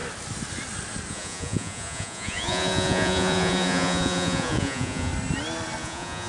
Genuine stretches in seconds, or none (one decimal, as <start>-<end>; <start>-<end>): 0.0-1.1; 5.1-5.8